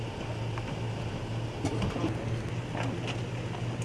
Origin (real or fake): real